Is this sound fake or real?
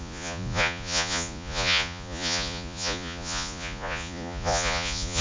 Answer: fake